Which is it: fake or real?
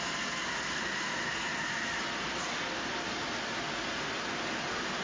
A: real